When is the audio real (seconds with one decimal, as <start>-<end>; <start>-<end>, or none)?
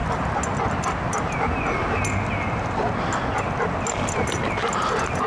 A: 0.0-5.3